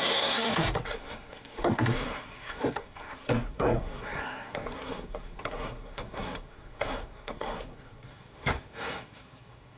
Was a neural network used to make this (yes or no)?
yes